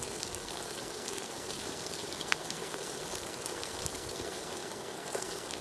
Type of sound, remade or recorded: remade